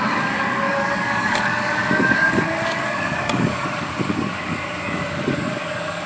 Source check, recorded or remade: remade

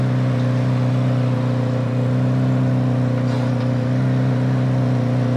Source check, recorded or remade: recorded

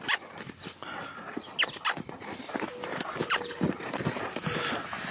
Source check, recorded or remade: recorded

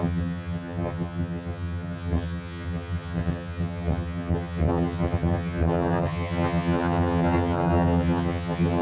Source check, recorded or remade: remade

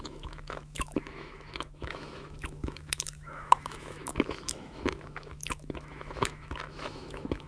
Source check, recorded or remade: remade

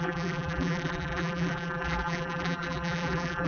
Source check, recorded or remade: remade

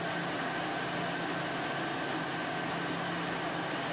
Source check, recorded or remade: recorded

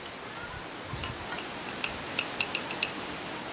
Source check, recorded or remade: recorded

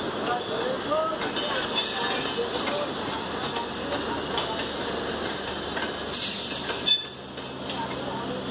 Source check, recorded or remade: recorded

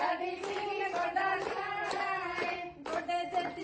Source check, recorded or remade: recorded